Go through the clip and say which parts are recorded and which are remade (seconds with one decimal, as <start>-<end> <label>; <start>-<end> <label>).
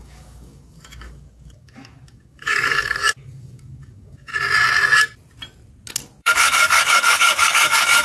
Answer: 0.0-4.3 remade; 4.3-6.2 recorded; 6.2-8.0 remade